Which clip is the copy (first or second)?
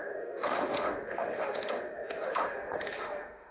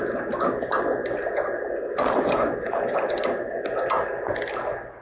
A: first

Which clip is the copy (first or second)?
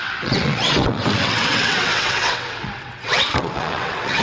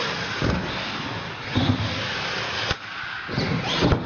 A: first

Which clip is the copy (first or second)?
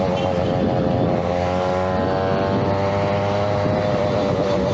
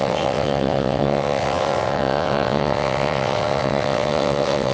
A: second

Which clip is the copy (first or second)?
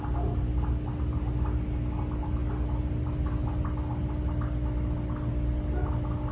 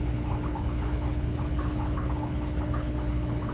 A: second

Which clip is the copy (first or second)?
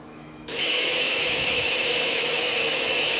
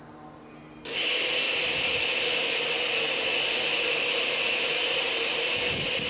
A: first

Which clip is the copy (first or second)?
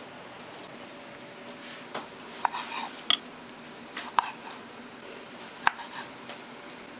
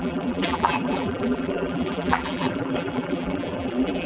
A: second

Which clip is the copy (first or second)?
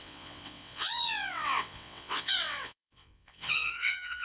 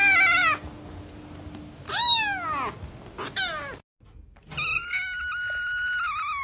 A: first